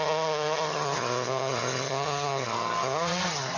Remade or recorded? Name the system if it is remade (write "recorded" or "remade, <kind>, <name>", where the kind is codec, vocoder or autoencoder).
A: remade, vocoder, HiFi-GAN